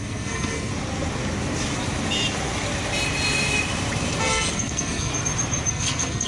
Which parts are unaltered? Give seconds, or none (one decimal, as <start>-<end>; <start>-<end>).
0.7-4.5; 5.1-5.7